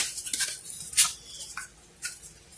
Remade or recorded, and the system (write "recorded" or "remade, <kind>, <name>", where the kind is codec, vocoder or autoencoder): recorded